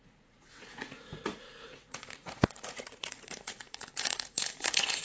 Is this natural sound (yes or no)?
no